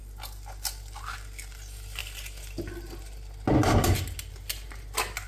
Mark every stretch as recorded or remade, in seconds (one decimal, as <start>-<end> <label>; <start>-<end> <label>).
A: 0.0-5.3 recorded